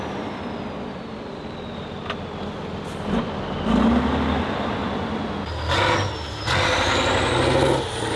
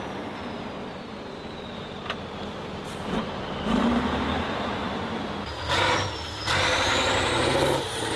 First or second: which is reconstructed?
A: second